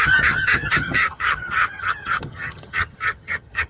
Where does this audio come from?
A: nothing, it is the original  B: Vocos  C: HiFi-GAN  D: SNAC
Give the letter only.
C